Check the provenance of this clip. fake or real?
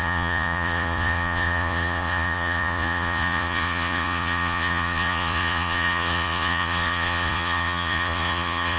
fake